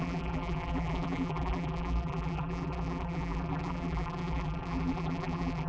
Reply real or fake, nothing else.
fake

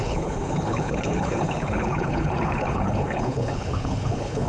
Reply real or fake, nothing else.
fake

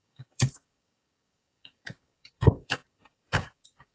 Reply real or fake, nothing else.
fake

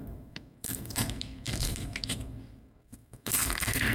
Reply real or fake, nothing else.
fake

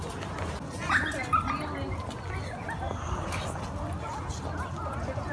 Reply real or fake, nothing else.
real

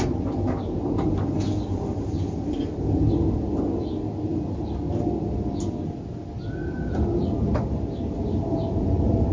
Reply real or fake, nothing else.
real